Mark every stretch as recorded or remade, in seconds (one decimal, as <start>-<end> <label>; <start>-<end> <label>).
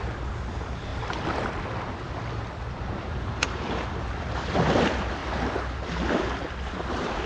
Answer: 0.0-7.3 recorded